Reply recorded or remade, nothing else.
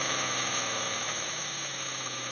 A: remade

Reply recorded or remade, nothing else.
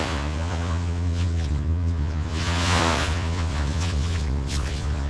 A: remade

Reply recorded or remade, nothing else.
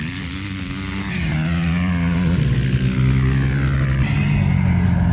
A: recorded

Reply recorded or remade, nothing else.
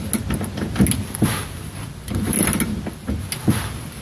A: recorded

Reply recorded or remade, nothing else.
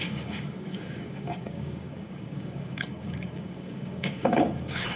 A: remade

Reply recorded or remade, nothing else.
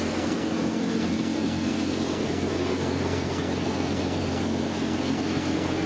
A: remade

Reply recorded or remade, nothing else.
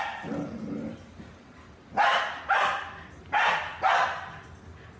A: recorded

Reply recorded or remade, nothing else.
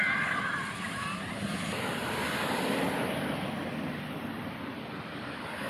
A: recorded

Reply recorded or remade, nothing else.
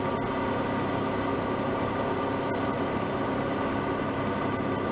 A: recorded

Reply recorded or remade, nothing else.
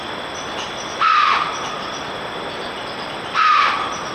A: recorded